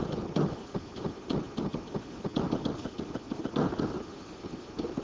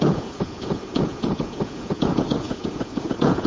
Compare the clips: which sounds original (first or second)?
first